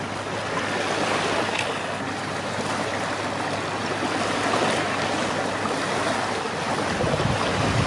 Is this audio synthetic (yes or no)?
no